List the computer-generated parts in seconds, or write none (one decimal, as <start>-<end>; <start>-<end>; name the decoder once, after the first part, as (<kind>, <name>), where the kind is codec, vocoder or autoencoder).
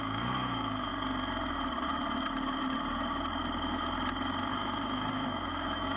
0.0-0.9 (autoencoder, DAC-VAE); 4.5-6.0